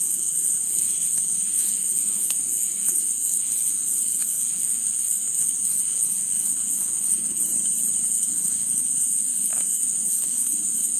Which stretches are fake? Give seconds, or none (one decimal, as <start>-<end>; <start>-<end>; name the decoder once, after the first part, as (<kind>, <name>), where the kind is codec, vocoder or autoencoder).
0.0-7.4 (codec, SNAC); 8.1-11.0